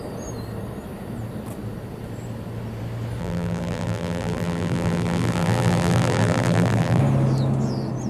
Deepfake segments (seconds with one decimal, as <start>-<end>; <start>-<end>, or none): 3.2-7.0